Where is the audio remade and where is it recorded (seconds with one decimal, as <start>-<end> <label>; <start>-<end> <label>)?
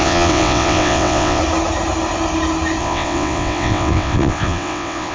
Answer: 0.0-1.4 remade; 1.4-2.8 recorded; 2.8-5.1 remade